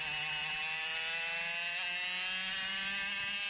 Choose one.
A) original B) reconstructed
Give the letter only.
A